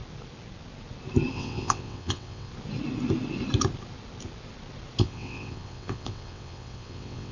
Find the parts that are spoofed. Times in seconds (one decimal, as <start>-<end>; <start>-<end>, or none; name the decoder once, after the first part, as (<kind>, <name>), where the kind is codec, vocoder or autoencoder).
1.3-2.5 (vocoder, WaveNeXt); 5.0-7.3